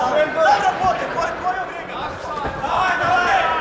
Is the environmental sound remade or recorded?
recorded